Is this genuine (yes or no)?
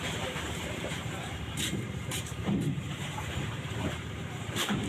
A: no